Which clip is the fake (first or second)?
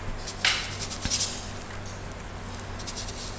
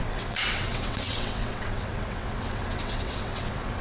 second